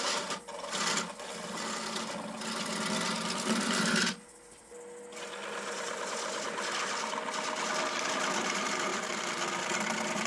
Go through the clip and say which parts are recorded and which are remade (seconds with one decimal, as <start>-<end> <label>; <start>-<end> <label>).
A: 0.0-10.3 recorded